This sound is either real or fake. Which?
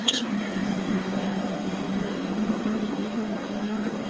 fake